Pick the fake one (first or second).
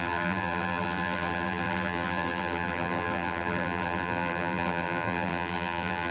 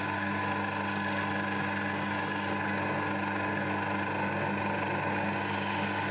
first